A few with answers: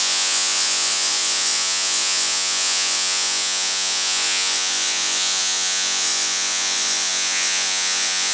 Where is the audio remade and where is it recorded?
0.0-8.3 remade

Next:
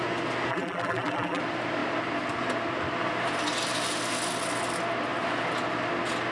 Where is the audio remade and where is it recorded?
0.0-0.5 recorded; 0.5-1.4 remade; 1.4-6.3 recorded

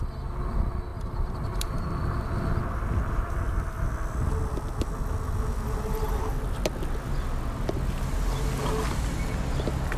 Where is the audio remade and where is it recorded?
0.0-0.9 recorded; 0.9-1.8 remade; 1.8-10.0 recorded